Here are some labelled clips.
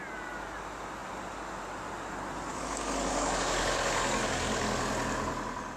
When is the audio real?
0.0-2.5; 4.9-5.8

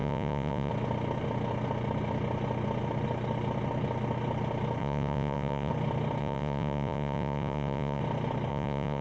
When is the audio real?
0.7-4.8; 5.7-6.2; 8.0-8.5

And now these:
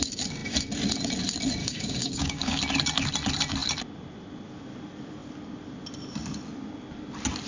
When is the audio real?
0.0-1.6; 2.6-7.5